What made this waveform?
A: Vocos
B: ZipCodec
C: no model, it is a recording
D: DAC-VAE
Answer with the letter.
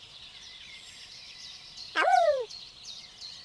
A